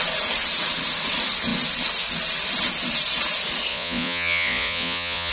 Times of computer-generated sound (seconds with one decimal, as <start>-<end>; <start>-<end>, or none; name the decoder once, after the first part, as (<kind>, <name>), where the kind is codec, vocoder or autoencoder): 3.7-5.3 (vocoder, Vocos)